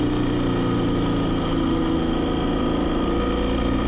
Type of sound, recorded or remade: recorded